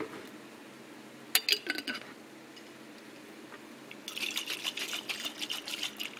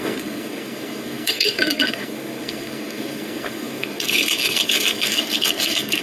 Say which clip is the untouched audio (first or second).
first